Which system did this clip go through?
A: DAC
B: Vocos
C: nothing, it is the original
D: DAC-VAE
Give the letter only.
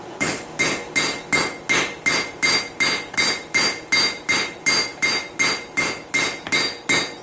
C